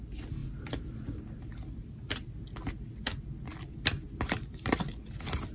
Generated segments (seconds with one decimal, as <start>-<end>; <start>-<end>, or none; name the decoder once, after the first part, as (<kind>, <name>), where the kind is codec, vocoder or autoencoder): none